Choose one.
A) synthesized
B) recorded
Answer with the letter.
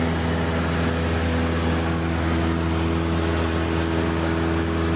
B